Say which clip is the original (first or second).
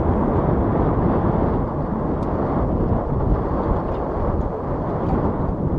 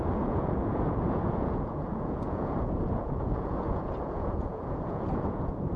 first